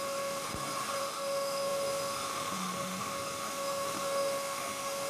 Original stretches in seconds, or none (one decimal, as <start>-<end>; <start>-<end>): 0.5-1.0